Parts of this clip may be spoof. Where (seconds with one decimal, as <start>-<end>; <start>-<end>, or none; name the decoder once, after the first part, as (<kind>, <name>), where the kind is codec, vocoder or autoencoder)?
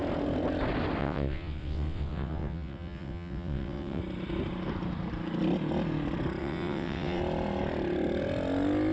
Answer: 1.0-4.0 (vocoder, WaveNeXt); 6.4-7.2